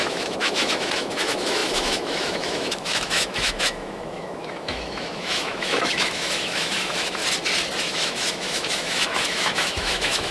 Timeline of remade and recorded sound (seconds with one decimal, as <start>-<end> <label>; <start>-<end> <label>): 0.0-7.2 remade; 7.2-7.8 recorded; 7.8-10.3 remade